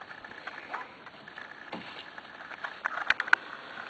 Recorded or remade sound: recorded